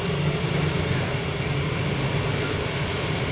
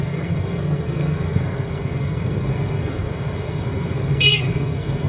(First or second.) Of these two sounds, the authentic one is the first